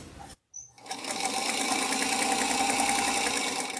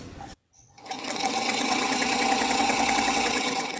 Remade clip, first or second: second